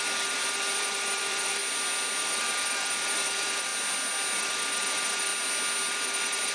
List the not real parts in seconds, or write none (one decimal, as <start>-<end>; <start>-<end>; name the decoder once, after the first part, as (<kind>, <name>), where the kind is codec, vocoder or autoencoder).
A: 0.0-1.6 (vocoder, BigVGAN v2); 2.2-3.7; 4.4-5.3; 5.9-6.5